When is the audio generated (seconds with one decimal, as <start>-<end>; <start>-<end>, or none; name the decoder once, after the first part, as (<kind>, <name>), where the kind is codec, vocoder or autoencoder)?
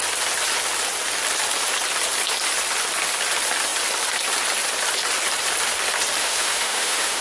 6.2-7.2 (autoencoder, DAC-VAE)